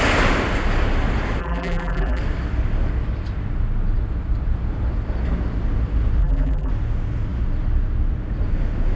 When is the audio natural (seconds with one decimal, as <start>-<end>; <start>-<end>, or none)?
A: 0.0-1.4; 2.2-6.2; 6.7-9.0